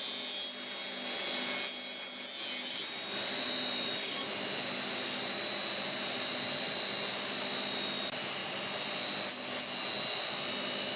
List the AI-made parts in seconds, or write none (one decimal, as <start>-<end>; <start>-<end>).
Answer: none